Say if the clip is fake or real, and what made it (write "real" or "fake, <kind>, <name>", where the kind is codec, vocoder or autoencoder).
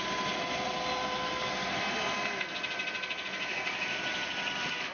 real